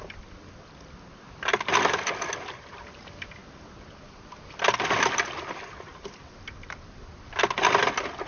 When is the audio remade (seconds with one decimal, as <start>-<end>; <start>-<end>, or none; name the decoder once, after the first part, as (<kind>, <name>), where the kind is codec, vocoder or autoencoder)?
none